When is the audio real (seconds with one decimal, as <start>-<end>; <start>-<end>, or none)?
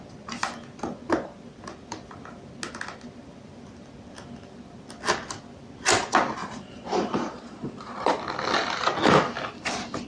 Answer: 0.0-6.4; 8.2-10.1